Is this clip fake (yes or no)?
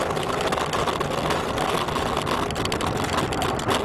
no